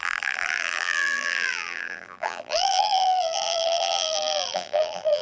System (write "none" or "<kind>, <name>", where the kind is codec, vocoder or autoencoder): vocoder, BigVGAN v2